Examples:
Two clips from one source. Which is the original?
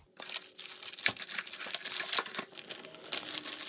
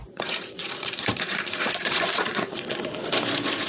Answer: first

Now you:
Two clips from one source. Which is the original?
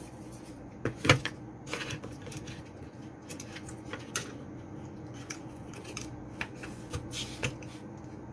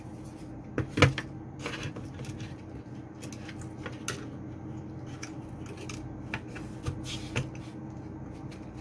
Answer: second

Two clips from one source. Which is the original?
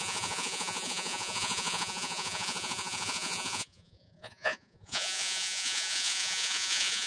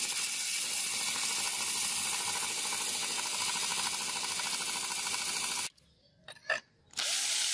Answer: second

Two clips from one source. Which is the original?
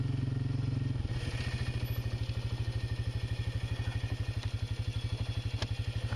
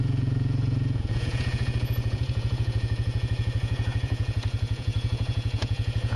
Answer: first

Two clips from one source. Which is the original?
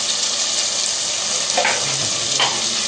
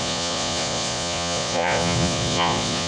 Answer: first